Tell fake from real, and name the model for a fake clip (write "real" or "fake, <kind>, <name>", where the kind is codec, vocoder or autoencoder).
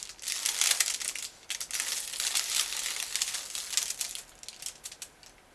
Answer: real